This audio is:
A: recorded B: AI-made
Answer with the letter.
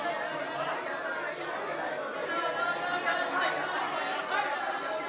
A